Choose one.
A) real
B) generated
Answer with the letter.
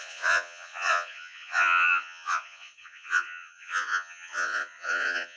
B